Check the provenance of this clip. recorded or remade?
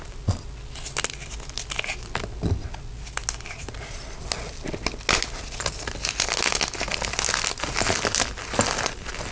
recorded